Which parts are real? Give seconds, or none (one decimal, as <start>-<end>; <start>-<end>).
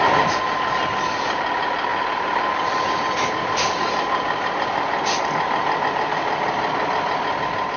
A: 0.0-7.8